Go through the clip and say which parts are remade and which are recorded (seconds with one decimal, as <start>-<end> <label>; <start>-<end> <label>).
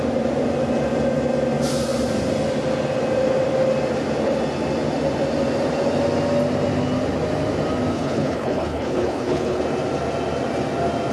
0.0-7.9 recorded; 7.9-9.6 remade; 9.6-11.1 recorded